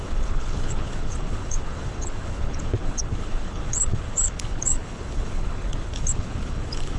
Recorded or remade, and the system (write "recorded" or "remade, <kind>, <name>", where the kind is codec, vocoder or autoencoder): remade, codec, HILCodec